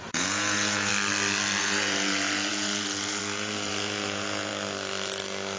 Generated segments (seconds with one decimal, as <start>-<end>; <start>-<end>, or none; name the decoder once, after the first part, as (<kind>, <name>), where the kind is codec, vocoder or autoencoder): 0.0-0.9 (vocoder, Vocos); 1.6-4.5